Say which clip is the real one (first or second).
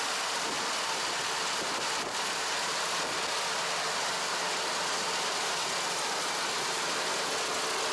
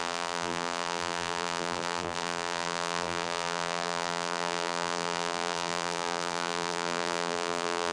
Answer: first